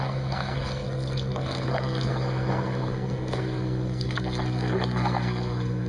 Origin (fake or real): fake